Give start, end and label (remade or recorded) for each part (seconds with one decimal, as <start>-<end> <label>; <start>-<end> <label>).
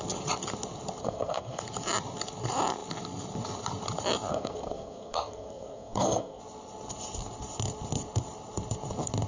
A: 0.0-1.0 recorded; 1.0-1.6 remade; 1.6-4.3 recorded; 4.3-6.4 remade; 6.4-9.3 recorded